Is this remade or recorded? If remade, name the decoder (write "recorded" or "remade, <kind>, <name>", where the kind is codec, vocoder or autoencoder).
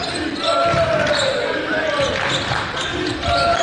recorded